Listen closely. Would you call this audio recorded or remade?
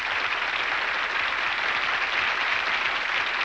recorded